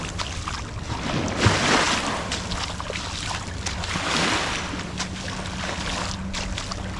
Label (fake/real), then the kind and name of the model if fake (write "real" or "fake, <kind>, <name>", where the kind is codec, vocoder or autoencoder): real